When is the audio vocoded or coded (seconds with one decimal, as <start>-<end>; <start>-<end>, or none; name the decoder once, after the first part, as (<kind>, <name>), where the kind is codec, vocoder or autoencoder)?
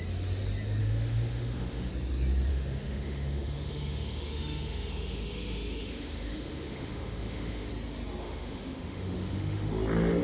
0.8-1.9 (autoencoder, DAC-VAE); 2.5-7.7; 8.2-9.7